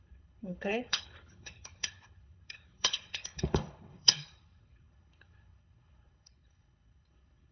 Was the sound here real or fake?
fake